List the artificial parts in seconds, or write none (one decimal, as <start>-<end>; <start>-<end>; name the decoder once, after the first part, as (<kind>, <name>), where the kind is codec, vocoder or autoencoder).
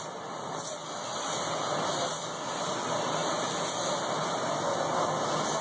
none